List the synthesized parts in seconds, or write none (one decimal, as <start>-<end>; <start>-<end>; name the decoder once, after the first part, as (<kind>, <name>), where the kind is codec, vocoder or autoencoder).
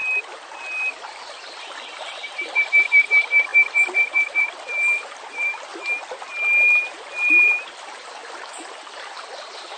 1.7-5.7 (vocoder, BigVGAN v2); 7.3-8.2; 8.7-9.8